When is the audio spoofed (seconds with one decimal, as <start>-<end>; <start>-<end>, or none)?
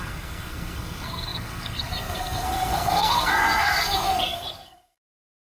0.0-5.4